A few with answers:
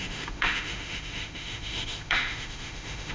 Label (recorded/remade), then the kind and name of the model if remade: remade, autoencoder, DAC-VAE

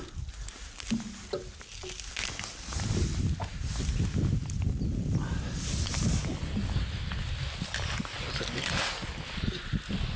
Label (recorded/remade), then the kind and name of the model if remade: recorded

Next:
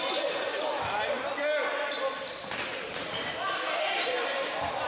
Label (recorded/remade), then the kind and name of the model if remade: recorded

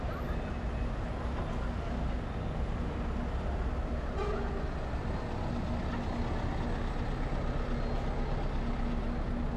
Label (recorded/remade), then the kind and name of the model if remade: recorded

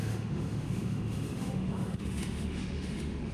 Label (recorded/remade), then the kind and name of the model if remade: remade, autoencoder, DAC-VAE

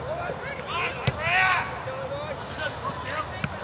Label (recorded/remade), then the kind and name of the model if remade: recorded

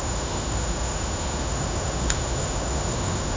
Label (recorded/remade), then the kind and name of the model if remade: remade, autoencoder, DAC-VAE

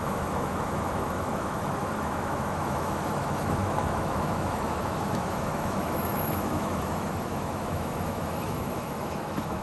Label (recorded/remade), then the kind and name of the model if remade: remade, autoencoder, DAC-VAE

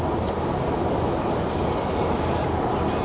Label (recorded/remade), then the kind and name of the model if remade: recorded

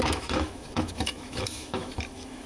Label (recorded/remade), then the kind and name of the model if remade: remade, autoencoder, DAC-VAE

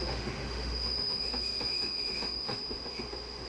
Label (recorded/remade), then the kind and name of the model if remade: remade, autoencoder, DAC-VAE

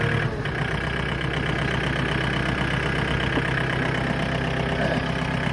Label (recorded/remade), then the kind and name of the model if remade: recorded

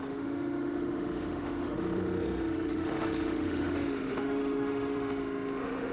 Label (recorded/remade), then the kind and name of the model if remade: remade, autoencoder, DAC-VAE